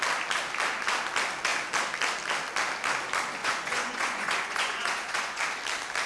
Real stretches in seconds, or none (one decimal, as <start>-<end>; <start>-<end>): 0.0-3.4; 5.4-6.1